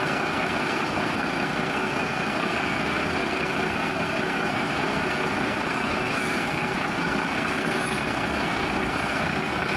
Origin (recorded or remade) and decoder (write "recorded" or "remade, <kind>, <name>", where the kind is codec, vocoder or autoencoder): remade, codec, SNAC